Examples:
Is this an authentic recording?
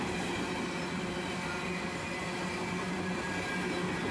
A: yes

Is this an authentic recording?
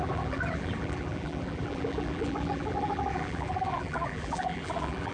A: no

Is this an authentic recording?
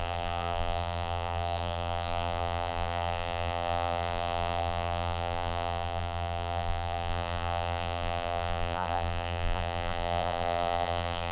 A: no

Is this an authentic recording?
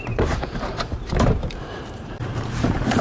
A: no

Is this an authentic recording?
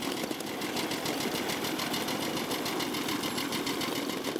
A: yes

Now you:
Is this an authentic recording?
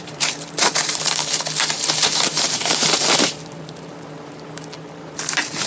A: no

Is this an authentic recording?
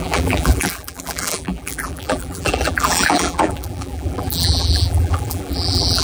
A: no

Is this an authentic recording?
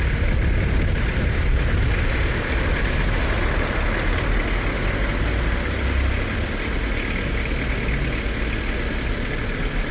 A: yes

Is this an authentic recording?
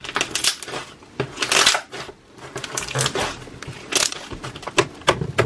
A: yes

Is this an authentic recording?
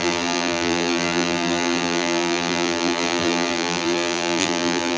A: no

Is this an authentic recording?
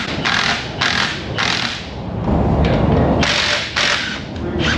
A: yes